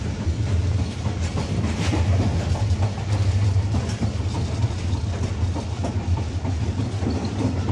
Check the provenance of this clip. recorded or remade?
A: remade